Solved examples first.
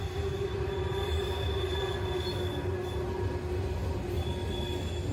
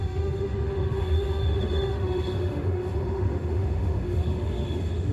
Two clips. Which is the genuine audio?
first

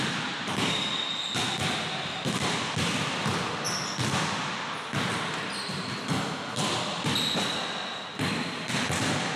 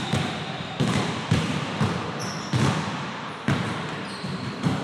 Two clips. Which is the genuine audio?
first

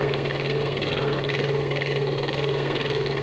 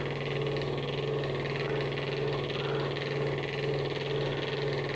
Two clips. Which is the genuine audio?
second